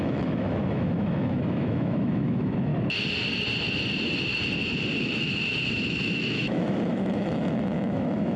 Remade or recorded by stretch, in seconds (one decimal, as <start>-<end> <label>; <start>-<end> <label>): 0.0-2.7 remade; 2.7-5.0 recorded; 5.0-8.4 remade